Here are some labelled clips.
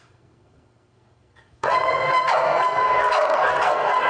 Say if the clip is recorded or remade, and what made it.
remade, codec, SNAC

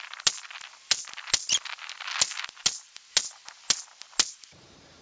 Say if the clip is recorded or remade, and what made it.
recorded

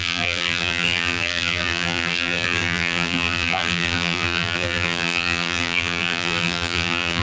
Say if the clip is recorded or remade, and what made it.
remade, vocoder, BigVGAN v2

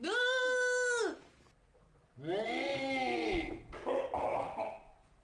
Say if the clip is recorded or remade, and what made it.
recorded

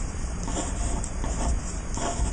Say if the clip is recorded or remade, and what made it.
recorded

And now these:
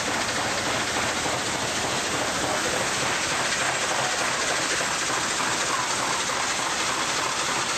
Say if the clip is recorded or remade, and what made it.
recorded